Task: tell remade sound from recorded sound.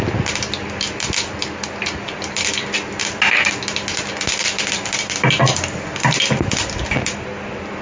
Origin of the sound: recorded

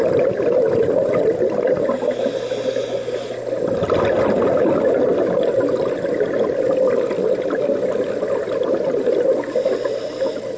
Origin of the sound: recorded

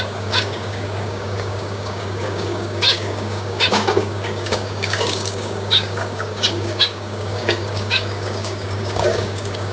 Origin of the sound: remade